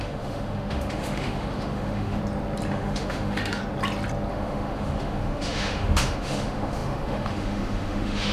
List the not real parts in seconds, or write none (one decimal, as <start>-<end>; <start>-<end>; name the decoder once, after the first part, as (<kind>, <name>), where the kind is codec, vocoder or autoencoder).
0.0-2.2 (autoencoder, DAC-VAE); 2.7-3.6; 4.3-8.3